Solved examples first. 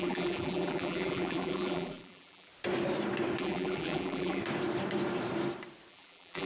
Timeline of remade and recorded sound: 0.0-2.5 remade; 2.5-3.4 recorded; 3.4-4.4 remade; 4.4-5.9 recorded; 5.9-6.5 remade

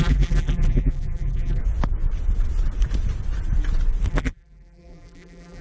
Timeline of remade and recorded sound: 0.0-1.6 remade; 1.6-4.1 recorded; 4.1-5.6 remade

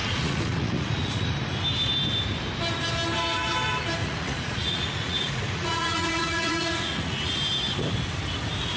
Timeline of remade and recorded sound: 0.0-1.3 remade; 1.3-4.0 recorded; 4.0-7.4 remade; 7.4-8.8 recorded

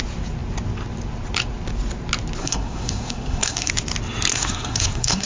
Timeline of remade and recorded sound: 0.0-2.4 recorded; 2.4-3.7 remade; 3.7-4.3 recorded; 4.3-5.3 remade

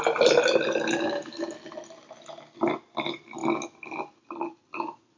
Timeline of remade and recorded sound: 0.0-5.2 recorded

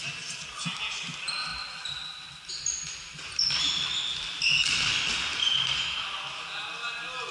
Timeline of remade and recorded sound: 0.0-5.3 recorded; 5.3-5.8 remade; 5.8-7.3 recorded

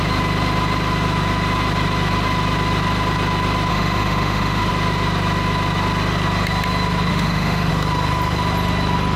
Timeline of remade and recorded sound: 0.0-3.7 recorded; 3.7-4.7 remade; 4.7-7.1 recorded; 7.1-7.7 remade; 7.7-9.2 recorded